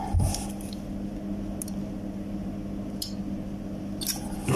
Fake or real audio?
real